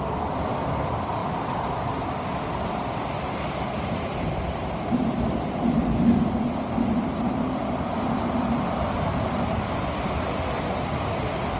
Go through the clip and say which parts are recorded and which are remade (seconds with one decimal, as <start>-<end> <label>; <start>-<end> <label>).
0.0-11.6 recorded